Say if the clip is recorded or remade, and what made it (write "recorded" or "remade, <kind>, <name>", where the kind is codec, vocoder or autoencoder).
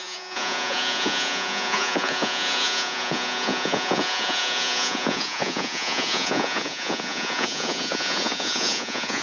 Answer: remade, vocoder, Vocos